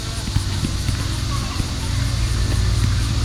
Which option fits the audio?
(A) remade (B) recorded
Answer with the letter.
B